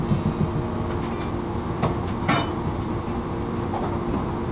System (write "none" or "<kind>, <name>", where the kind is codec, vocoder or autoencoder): none